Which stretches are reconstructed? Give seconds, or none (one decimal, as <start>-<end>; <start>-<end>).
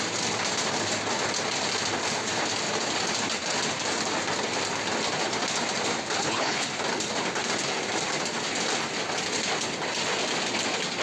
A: 6.2-6.7